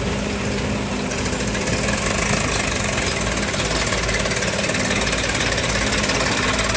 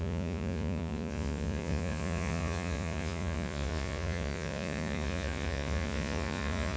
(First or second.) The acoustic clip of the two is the first